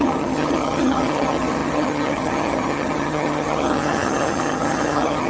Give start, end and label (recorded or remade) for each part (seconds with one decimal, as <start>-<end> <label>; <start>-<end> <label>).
0.0-5.3 remade